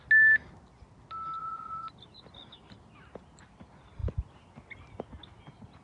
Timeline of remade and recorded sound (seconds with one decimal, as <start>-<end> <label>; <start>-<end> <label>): 0.0-1.4 recorded; 1.4-1.9 remade; 1.9-5.8 recorded

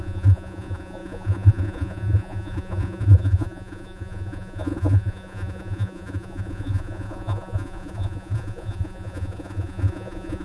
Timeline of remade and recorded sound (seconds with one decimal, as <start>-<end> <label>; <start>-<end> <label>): 0.0-10.4 remade

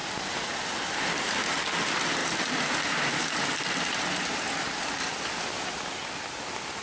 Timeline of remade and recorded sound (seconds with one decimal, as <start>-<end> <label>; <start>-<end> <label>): 0.0-0.6 remade; 0.6-6.8 recorded

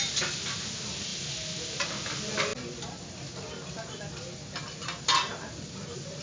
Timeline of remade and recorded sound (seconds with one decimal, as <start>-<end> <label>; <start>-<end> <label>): 0.0-6.2 recorded

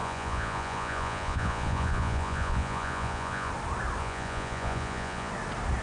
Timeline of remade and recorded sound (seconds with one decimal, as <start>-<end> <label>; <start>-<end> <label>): 0.0-3.5 remade; 3.5-4.0 recorded; 4.0-5.3 remade; 5.3-5.8 recorded

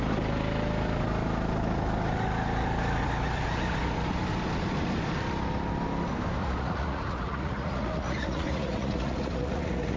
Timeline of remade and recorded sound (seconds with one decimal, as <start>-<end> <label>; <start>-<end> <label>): 0.0-6.4 recorded; 6.4-10.0 remade

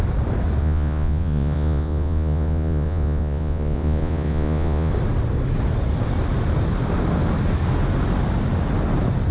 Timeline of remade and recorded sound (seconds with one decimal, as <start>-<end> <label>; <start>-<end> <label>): 0.0-0.6 recorded; 0.6-4.9 remade; 4.9-9.3 recorded